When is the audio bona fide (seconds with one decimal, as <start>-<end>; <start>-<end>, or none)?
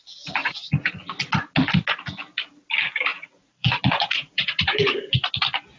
0.0-0.4; 0.9-3.1; 5.3-5.8